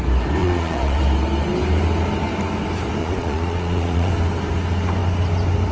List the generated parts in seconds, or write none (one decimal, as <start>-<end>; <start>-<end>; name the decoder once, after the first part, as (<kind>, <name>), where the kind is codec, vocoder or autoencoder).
0.4-1.0 (vocoder, Vocos); 3.0-4.1